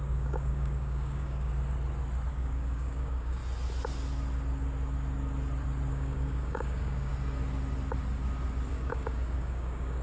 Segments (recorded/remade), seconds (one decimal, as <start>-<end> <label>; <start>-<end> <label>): 0.0-1.5 remade; 1.5-2.3 recorded; 2.3-3.4 remade; 3.4-5.9 recorded; 5.9-7.1 remade; 7.1-8.7 recorded; 8.7-10.0 remade